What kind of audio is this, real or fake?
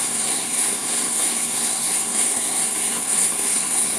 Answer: fake